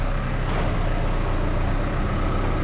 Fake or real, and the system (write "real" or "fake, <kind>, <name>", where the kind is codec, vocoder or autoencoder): real